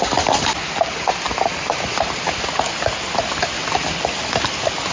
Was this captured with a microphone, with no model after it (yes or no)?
yes